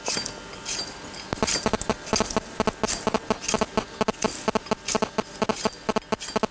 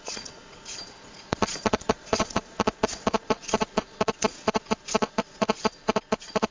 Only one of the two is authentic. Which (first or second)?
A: first